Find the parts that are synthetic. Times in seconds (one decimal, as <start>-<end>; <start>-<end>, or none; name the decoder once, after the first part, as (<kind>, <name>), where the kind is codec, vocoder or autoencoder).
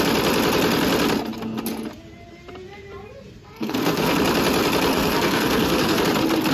3.4-4.1 (codec, SNAC); 4.9-6.0